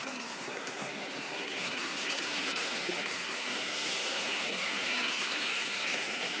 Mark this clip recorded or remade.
remade